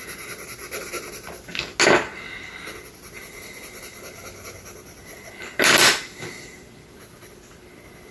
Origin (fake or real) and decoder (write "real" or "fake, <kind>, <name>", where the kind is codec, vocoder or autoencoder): real